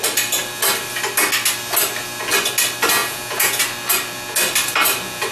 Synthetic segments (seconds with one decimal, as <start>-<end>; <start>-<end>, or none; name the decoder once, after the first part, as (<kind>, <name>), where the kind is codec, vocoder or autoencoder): 3.0-3.6 (vocoder, Vocos)